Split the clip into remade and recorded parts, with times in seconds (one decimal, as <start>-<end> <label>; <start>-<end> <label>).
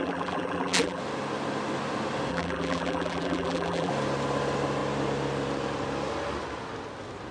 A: 0.0-1.0 remade; 1.0-2.3 recorded; 2.3-3.9 remade; 3.9-7.3 recorded